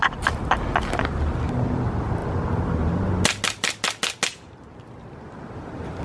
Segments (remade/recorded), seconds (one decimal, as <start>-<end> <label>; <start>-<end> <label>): 0.0-6.0 recorded

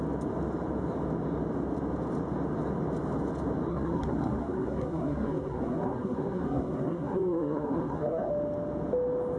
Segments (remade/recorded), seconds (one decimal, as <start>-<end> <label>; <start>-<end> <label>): 0.0-3.7 recorded; 3.7-8.3 remade; 8.3-9.4 recorded

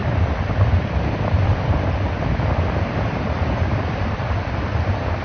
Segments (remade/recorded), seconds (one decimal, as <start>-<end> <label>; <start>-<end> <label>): 0.0-5.2 recorded

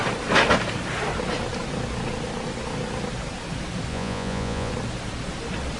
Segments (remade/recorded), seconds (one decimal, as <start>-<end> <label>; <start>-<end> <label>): 0.0-3.9 recorded; 3.9-4.7 remade; 4.7-5.8 recorded

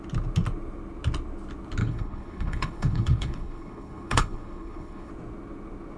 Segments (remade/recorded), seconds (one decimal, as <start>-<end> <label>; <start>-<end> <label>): 0.0-1.8 recorded; 1.8-5.1 remade; 5.1-6.0 recorded

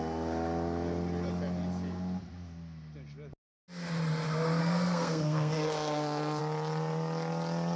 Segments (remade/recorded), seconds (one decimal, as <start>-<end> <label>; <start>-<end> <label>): 0.0-4.6 recorded; 4.6-6.4 remade; 6.4-7.8 recorded